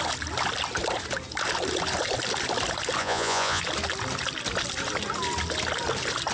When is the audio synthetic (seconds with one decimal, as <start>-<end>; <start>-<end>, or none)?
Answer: 3.0-3.6